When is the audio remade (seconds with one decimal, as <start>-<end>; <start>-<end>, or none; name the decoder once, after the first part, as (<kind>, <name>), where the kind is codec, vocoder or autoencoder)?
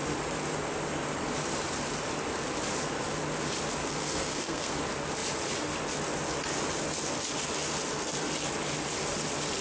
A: 3.8-4.8 (codec, SNAC)